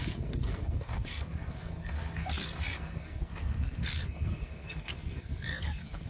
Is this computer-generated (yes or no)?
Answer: yes